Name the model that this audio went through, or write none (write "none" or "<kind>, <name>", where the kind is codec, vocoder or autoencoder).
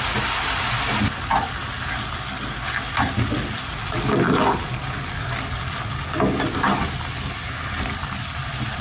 none